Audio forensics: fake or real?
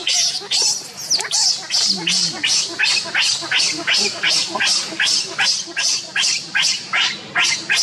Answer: real